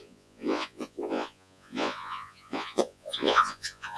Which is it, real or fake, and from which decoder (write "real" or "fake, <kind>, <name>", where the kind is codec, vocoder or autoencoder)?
fake, vocoder, Vocos